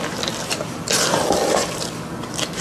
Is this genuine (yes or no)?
yes